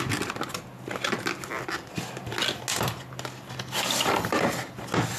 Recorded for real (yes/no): yes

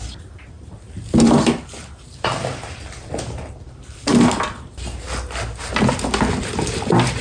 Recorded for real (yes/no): yes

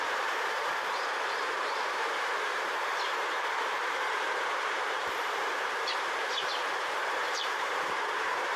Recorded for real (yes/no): no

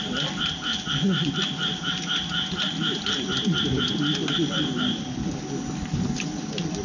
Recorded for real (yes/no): yes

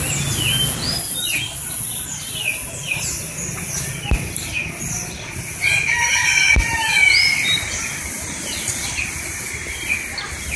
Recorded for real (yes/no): yes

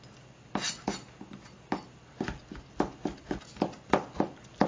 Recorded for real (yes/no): yes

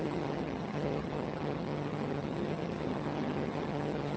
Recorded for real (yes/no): no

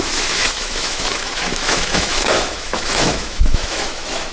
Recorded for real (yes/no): no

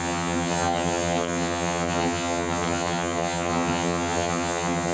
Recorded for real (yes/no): no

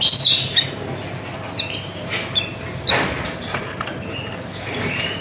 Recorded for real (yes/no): yes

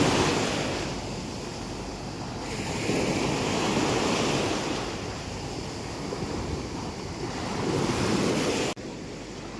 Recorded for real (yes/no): yes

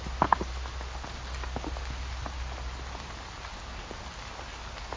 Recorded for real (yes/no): yes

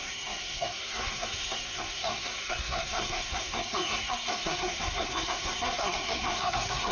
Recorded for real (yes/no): no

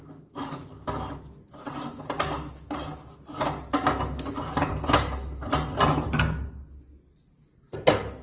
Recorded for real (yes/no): yes